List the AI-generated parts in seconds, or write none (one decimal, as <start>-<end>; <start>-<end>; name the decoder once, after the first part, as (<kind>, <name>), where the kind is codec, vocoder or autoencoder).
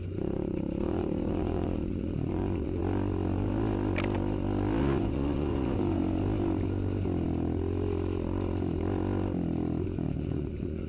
0.0-2.8 (vocoder, Vocos); 4.8-6.0; 9.8-10.9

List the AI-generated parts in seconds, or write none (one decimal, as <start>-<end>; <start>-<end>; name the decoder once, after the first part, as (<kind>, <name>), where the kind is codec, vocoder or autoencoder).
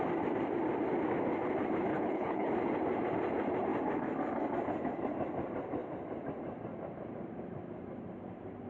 1.9-2.5 (codec, HILCodec)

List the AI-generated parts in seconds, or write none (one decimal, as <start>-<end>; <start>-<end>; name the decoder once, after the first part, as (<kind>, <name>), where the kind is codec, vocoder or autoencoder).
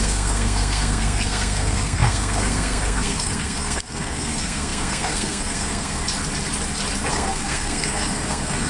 0.0-6.0 (codec, SNAC); 7.1-8.7